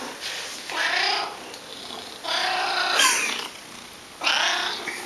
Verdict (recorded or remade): recorded